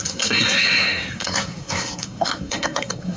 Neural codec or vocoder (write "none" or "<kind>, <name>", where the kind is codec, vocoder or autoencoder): codec, SNAC